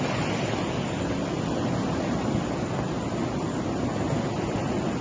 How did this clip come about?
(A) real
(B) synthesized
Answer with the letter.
A